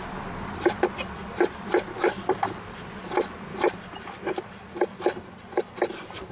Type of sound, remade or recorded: recorded